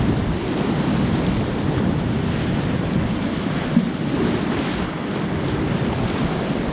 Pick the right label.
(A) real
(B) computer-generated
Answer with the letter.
A